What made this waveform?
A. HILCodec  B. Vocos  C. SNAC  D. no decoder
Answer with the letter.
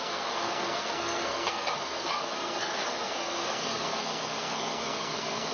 C